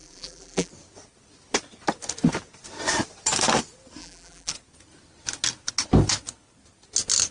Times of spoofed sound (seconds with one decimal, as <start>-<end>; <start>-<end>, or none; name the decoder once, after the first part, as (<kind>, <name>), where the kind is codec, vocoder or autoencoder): 0.0-0.7 (vocoder, BigVGAN v2); 4.0-4.5